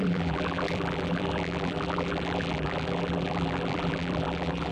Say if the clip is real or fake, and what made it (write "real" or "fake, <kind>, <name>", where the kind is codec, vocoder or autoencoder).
fake, vocoder, BigVGAN v2